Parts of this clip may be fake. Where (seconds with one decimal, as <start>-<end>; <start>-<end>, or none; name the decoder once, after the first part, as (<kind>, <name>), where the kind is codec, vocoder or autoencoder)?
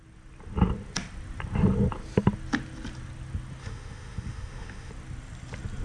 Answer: 3.6-4.9 (autoencoder, DAC-VAE)